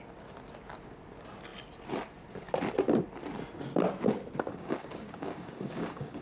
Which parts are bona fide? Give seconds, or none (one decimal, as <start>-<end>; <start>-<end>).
0.0-4.5